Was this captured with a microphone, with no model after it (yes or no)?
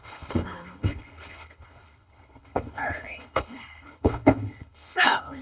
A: no